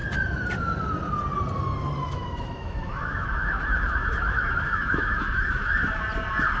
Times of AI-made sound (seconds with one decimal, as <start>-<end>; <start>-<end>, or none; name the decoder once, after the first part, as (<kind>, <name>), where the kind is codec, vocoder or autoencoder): 2.0-6.0 (autoencoder, DAC-VAE)